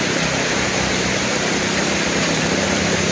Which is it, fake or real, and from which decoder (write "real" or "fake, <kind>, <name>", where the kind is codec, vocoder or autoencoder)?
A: fake, vocoder, BigVGAN v2